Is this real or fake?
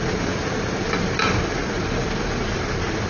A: fake